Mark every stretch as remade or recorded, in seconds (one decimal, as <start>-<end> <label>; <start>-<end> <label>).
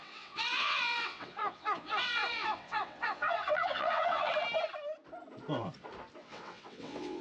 0.0-4.3 remade; 4.3-6.2 recorded; 6.2-7.2 remade